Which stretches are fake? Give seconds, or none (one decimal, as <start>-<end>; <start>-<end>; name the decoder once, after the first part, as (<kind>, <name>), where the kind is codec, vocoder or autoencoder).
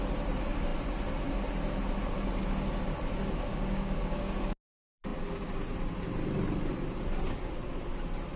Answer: 3.5-4.2 (codec, DAC)